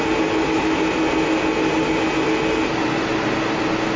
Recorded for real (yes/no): yes